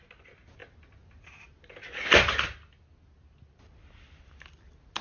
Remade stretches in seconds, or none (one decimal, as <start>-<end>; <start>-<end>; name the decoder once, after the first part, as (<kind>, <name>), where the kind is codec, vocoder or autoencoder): none